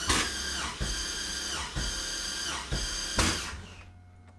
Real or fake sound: real